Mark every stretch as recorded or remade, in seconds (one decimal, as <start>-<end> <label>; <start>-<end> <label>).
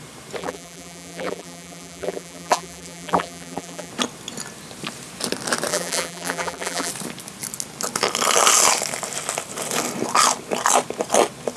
0.0-0.4 recorded; 0.4-3.9 remade; 3.9-5.7 recorded; 5.7-6.9 remade; 6.9-11.6 recorded